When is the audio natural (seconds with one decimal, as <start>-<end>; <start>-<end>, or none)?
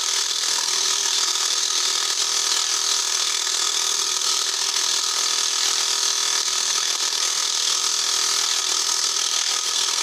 2.2-3.0; 5.2-6.4; 7.8-8.6